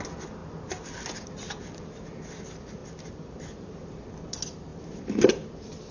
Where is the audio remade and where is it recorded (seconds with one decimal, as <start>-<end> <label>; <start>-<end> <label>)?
0.0-5.9 recorded